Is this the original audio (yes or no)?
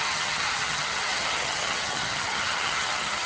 no